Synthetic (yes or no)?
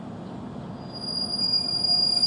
no